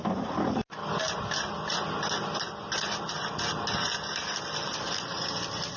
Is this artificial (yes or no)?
no